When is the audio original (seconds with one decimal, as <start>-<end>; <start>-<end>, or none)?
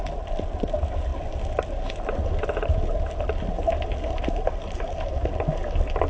0.0-6.1